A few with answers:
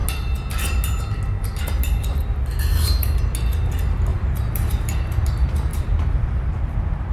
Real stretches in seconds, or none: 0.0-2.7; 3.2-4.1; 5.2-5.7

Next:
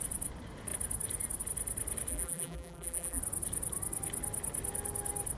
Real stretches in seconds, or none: 0.0-2.1; 3.2-5.4

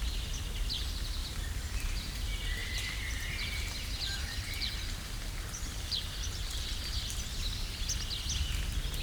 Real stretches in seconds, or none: 0.0-1.2; 2.1-2.6; 6.8-9.0

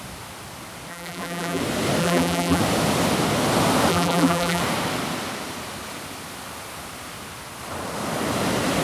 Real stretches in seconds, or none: 0.0-0.9; 1.6-2.0; 2.6-3.9; 4.6-8.8

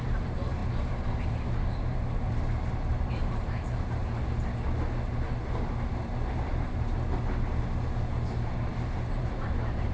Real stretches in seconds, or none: 4.0-9.2